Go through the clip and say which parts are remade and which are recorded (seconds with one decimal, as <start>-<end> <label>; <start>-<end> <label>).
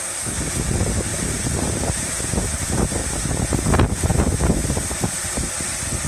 0.0-1.1 recorded; 1.1-2.1 remade; 2.1-6.1 recorded